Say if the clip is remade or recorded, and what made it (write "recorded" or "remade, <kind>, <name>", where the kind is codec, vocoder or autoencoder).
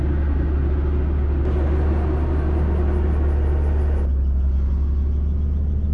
recorded